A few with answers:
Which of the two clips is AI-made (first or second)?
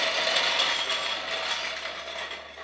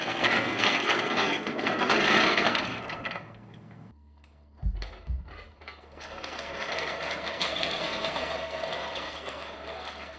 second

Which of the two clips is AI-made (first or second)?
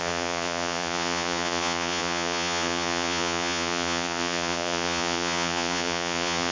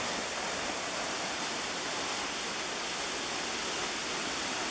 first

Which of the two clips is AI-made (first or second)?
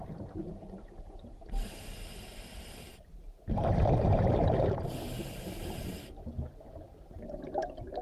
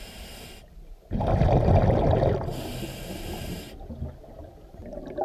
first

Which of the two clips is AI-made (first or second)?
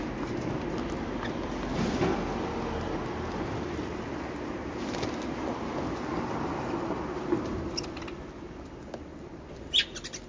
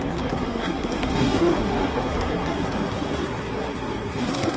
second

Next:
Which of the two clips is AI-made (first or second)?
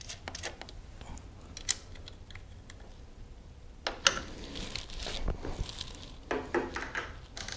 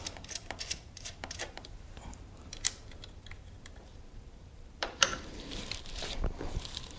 second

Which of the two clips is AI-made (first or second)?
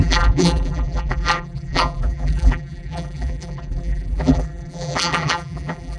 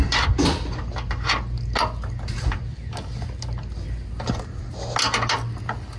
first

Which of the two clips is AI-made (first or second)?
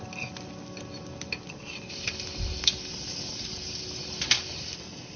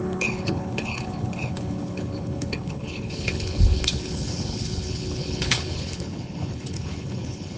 second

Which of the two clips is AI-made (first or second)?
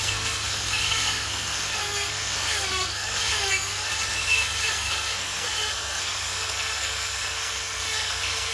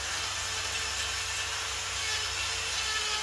first